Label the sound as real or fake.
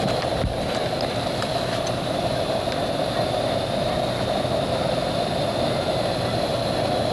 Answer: real